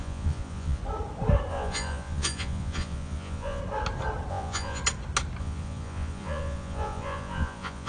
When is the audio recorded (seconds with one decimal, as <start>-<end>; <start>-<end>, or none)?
0.8-1.5; 3.6-4.3; 4.8-5.4